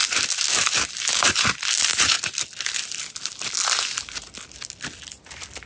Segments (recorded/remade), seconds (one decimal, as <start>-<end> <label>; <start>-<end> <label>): 0.0-5.7 recorded